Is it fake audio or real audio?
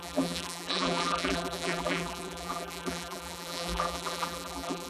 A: fake